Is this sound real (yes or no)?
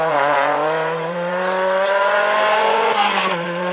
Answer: no